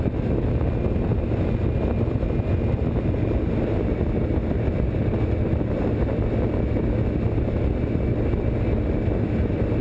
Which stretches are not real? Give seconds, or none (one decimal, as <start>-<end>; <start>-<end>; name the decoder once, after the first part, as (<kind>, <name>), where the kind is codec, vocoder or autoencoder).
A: none